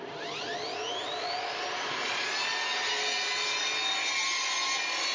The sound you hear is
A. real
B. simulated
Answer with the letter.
A